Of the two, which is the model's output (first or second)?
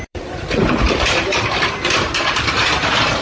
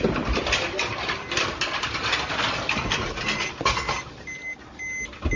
first